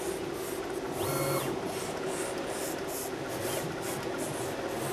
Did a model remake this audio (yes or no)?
no